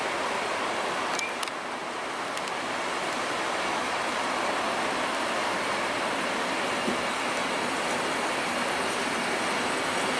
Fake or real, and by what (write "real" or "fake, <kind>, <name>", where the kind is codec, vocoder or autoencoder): real